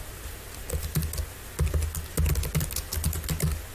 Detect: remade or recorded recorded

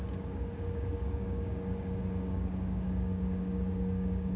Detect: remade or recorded remade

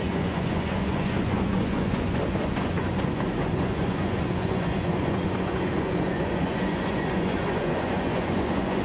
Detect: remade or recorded remade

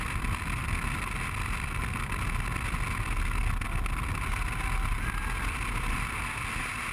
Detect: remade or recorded recorded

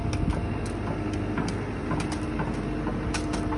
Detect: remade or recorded recorded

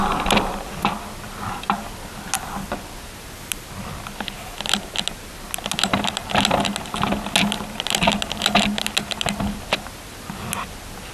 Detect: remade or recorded recorded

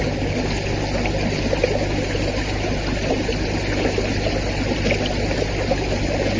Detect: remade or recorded recorded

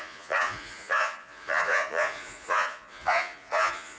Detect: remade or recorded remade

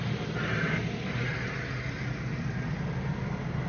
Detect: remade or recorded recorded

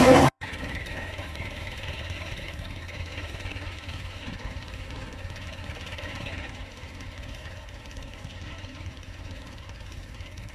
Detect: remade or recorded remade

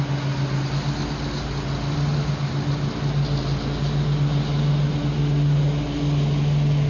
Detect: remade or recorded recorded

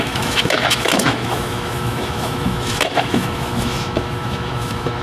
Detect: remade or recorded remade